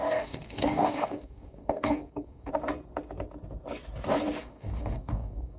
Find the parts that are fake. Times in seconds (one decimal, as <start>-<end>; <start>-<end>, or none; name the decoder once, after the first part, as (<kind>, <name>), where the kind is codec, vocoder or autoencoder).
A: 0.0-2.5 (codec, DAC); 4.4-5.6